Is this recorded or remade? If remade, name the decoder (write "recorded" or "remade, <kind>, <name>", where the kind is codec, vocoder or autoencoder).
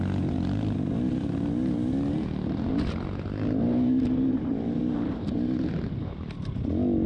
recorded